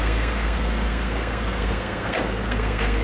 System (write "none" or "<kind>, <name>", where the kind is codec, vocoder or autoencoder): codec, SNAC